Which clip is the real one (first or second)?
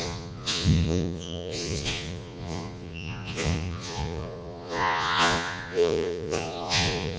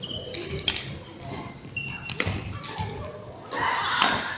second